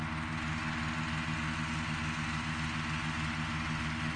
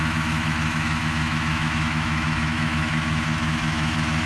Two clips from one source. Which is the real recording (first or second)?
first